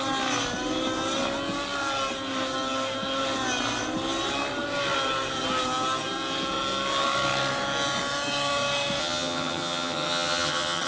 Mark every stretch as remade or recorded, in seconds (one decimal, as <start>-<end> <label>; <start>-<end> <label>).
0.0-9.0 recorded; 9.0-10.9 remade